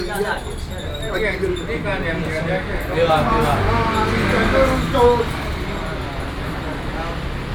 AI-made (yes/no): no